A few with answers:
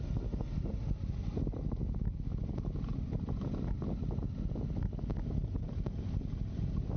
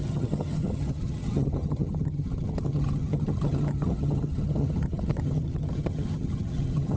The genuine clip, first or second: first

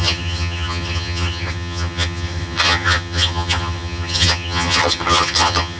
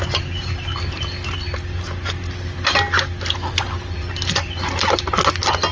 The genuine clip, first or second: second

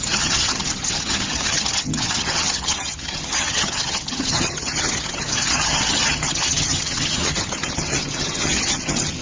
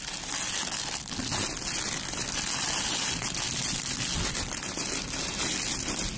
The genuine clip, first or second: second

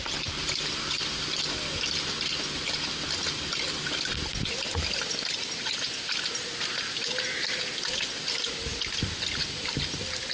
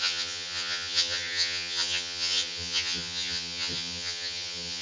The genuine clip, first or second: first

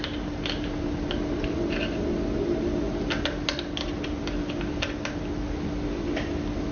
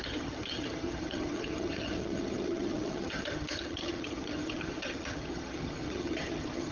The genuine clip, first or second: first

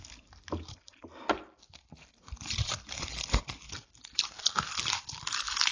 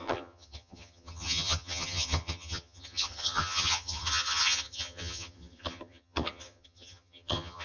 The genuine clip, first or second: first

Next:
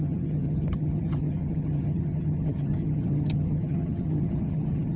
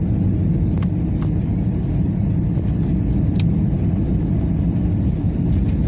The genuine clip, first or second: second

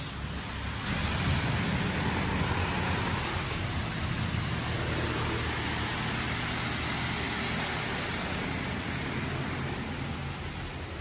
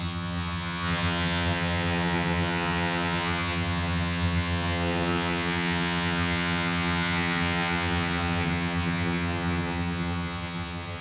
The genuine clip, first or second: first